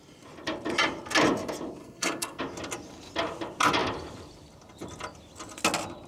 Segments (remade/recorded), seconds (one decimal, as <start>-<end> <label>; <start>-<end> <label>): 0.0-1.8 recorded; 1.8-2.4 remade; 2.4-6.1 recorded